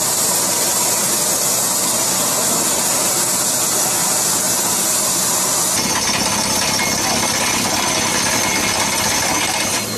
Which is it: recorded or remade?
recorded